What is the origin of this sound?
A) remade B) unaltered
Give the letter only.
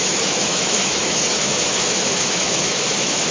A